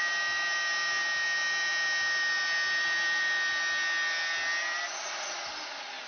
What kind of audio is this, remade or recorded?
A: recorded